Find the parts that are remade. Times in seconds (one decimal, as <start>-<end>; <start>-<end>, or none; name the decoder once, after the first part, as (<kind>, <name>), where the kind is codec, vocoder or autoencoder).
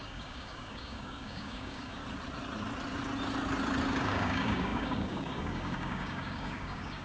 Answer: 0.0-2.0 (codec, DAC); 4.0-7.0